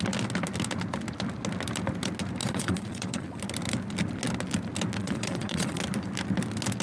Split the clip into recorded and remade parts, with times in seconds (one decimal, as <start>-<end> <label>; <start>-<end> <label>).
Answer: 0.0-2.4 recorded; 2.4-3.4 remade; 3.4-5.0 recorded; 5.0-5.8 remade; 5.8-6.8 recorded